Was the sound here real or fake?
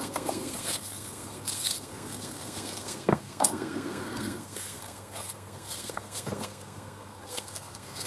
fake